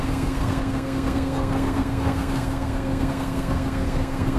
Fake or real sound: fake